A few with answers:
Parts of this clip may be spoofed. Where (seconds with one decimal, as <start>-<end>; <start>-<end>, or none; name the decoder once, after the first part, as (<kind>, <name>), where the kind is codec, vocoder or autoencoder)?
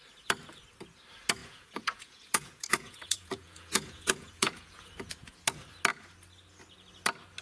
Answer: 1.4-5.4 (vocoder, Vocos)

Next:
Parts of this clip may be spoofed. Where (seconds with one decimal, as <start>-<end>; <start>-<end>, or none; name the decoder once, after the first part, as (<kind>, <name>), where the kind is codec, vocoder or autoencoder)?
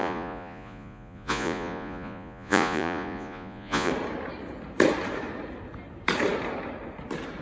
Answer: 0.0-3.9 (vocoder, Vocos)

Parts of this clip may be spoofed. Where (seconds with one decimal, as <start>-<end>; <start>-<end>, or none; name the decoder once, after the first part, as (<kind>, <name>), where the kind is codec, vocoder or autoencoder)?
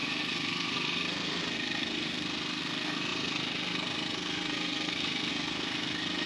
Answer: 0.0-6.3 (codec, SNAC)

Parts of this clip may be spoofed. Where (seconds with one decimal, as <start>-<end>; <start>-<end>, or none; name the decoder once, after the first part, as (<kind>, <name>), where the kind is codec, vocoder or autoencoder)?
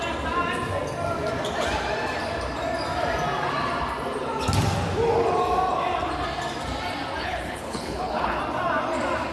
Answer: 7.2-8.4 (codec, HILCodec)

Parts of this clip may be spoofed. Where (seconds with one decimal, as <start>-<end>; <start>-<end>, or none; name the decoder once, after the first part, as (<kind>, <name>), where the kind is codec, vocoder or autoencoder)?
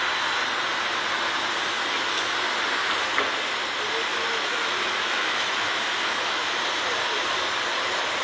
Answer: 4.1-6.6 (autoencoder, DAC-VAE)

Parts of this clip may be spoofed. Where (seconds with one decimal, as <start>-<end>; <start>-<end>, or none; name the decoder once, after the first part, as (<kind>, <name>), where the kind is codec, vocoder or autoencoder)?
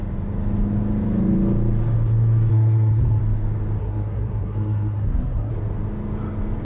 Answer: 2.5-3.2 (codec, SNAC); 3.8-5.5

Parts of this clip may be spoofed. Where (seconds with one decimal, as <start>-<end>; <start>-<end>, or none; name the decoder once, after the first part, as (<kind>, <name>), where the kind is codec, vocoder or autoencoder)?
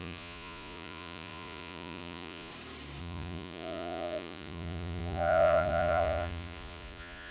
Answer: 0.0-2.5 (vocoder, Vocos); 3.0-7.3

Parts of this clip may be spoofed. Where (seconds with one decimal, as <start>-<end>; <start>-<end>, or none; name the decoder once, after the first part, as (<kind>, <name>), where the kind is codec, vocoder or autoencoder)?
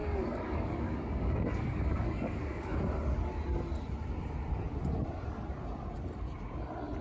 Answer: 0.0-2.8 (codec, DAC)